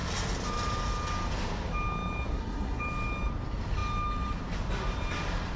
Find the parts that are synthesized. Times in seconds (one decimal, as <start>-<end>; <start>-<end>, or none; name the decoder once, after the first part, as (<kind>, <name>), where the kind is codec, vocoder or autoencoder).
2.3-2.8 (codec, SNAC)